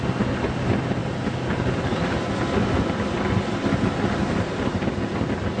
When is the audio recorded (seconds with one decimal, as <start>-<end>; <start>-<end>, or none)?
0.0-5.6